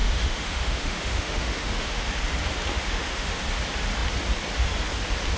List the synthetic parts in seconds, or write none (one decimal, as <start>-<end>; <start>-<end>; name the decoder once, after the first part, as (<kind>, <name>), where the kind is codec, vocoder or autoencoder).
0.0-2.1 (autoencoder, DAC-VAE); 2.7-3.4